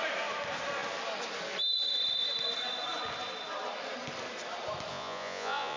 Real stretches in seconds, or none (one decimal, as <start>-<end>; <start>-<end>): 0.0-4.9